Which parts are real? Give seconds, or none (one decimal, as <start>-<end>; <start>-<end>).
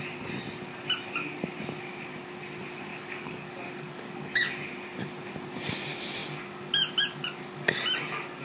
0.0-2.9; 4.5-8.4